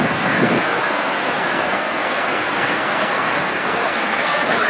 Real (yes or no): no